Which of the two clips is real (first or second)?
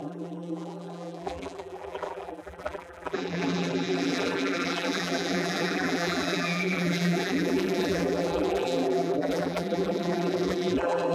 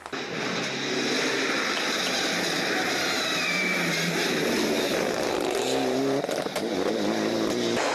second